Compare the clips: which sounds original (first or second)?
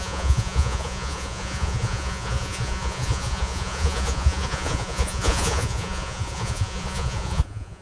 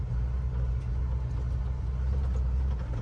second